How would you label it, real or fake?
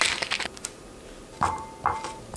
real